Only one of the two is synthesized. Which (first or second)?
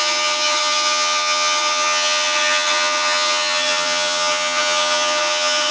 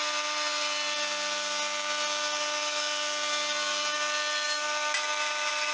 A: first